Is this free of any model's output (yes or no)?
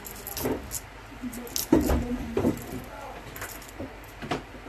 yes